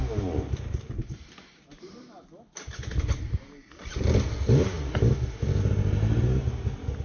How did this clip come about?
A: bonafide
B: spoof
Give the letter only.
A